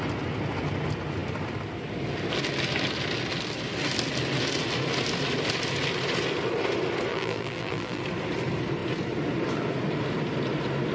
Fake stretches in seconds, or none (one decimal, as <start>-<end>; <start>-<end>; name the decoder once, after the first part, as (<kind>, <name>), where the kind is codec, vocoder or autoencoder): 7.1-8.0 (vocoder, BigVGAN v2)